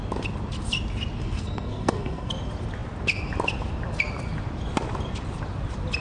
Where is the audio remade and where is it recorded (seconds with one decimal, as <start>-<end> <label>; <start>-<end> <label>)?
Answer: 0.0-1.2 recorded; 1.2-2.3 remade; 2.3-6.0 recorded